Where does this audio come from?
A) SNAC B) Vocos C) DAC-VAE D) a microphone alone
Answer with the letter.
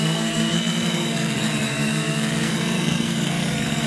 A